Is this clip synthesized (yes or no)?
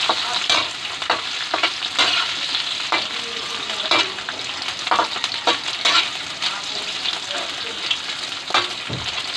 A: no